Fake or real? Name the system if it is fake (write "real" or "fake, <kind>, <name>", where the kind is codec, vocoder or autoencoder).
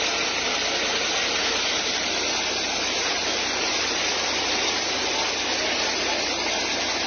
real